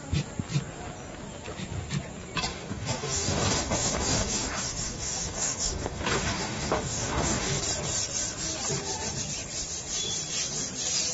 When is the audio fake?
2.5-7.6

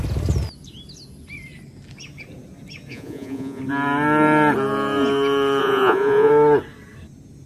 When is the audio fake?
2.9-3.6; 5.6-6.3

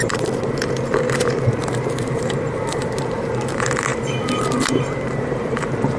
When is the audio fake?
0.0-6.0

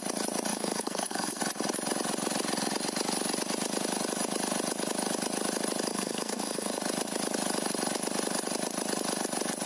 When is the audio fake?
0.5-1.4; 5.9-6.8

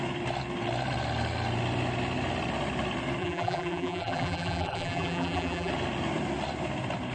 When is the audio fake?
3.2-5.7

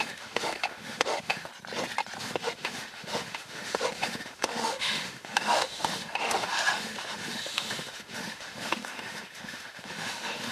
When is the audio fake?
0.0-1.5; 2.2-10.5